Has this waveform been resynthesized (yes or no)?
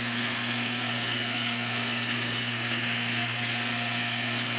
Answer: yes